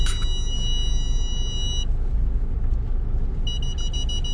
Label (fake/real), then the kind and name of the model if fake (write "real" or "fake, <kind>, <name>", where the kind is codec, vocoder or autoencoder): real